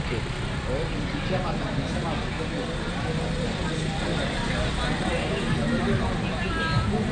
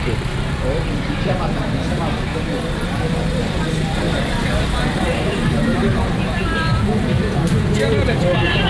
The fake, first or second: second